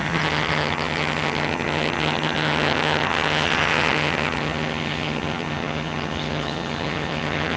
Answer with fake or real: fake